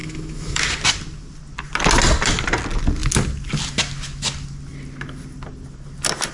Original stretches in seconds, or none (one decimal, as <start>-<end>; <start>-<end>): 0.6-6.3

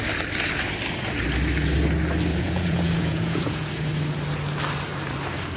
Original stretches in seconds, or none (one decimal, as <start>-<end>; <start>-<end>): 0.0-2.3; 3.7-5.6

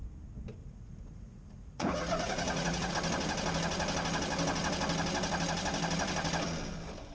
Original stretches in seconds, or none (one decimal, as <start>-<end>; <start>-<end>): 0.0-0.6; 2.9-7.1

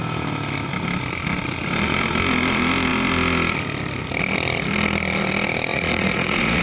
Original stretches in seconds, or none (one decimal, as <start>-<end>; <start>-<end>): 0.0-5.7

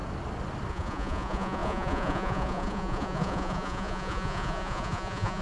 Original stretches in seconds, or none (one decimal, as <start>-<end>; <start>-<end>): 0.0-0.7